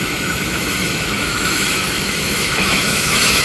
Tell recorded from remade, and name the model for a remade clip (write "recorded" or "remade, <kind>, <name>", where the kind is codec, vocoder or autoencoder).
remade, autoencoder, DAC-VAE